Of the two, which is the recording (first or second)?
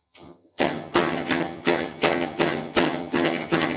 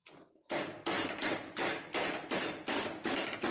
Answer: second